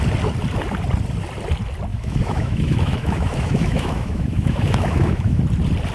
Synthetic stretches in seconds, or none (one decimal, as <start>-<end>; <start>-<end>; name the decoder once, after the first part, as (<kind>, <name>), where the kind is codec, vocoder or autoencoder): 1.9-5.4 (autoencoder, DAC-VAE)